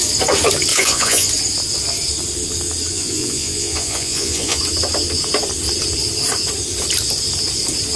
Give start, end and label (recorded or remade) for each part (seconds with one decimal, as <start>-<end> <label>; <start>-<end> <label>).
0.0-0.7 recorded; 0.7-1.3 remade; 1.3-2.9 recorded; 2.9-4.6 remade; 4.6-8.0 recorded